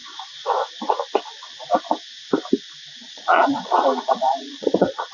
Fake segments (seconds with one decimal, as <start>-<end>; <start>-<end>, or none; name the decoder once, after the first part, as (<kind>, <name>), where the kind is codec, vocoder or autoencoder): 3.1-5.1 (vocoder, Vocos)

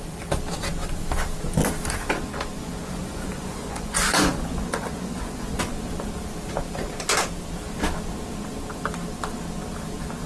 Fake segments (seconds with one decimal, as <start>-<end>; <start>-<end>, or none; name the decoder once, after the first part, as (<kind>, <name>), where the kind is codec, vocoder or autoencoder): 2.6-5.6 (vocoder, Vocos)

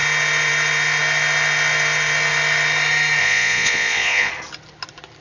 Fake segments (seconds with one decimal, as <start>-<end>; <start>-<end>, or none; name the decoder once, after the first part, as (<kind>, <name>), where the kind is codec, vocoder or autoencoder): 3.2-4.3 (vocoder, Vocos)

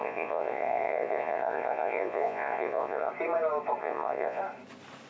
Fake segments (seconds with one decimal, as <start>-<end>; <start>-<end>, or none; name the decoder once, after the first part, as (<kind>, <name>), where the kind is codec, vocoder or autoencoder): 0.0-3.1 (vocoder, Vocos); 3.8-4.4

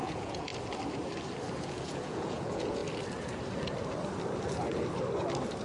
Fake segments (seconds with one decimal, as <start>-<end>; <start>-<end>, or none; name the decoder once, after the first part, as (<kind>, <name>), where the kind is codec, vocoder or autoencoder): 0.0-0.5 (vocoder, Vocos); 1.6-2.8